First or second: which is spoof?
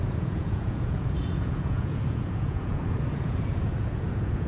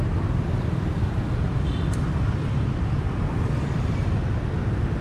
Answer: first